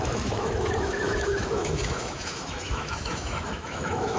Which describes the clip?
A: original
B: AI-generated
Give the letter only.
B